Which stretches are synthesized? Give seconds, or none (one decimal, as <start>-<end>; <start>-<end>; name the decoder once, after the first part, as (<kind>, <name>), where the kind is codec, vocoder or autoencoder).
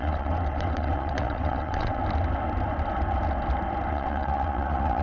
0.0-2.0 (vocoder, WaveNeXt); 3.9-5.0